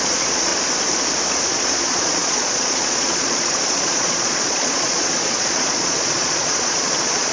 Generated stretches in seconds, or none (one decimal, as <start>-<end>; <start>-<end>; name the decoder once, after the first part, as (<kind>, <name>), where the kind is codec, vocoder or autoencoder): 0.0-0.5 (vocoder, Vocos); 1.5-7.3